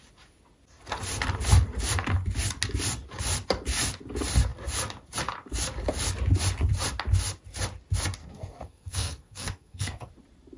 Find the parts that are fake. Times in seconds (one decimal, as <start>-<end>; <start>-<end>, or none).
8.2-10.1